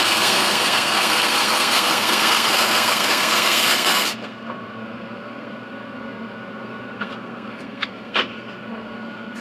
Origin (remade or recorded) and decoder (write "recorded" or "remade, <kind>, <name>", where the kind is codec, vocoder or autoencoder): remade, codec, SNAC